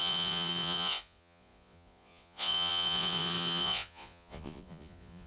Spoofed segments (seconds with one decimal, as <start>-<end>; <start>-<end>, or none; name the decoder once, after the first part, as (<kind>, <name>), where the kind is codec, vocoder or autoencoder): 0.0-5.3 (vocoder, Vocos)